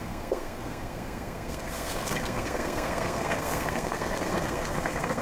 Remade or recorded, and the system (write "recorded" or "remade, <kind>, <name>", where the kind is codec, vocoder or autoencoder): remade, codec, SNAC